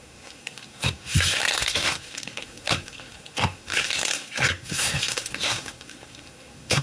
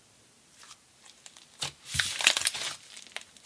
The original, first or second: second